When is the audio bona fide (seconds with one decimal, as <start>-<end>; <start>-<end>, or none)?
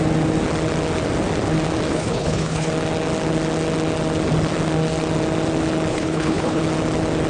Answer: 0.0-1.9; 2.7-5.9; 6.6-7.3